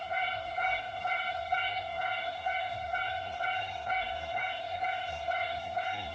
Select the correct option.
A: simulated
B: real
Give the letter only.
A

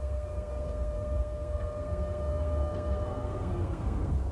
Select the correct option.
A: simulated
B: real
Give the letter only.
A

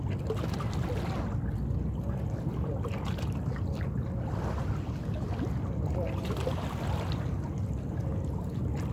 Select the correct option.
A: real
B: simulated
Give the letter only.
A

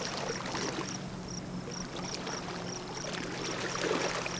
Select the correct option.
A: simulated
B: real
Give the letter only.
B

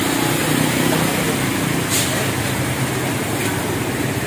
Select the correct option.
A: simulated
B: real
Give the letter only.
B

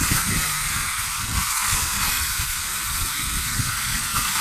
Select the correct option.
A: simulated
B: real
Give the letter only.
A